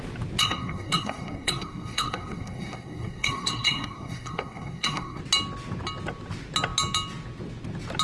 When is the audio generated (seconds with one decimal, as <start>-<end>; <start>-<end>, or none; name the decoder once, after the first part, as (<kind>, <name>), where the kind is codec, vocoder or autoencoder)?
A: 0.4-5.2 (codec, SNAC)